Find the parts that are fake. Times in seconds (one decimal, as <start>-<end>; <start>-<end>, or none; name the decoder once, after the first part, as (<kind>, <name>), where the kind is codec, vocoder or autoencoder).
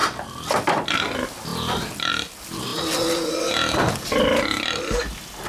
0.0-0.7 (vocoder, BigVGAN v2)